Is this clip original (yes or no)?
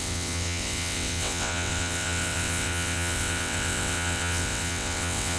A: no